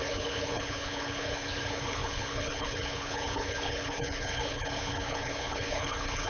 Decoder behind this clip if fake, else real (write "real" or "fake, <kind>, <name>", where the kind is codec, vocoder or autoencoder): fake, codec, HILCodec